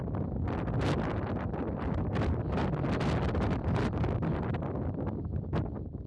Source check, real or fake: fake